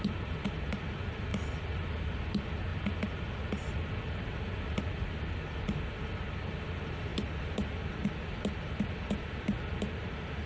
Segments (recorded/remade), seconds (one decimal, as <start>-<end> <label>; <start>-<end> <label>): 0.0-10.5 recorded